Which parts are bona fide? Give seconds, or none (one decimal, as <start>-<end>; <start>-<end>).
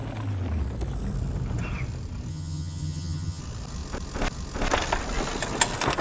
0.0-2.3; 3.4-6.0